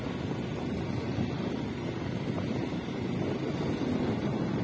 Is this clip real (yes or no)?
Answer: yes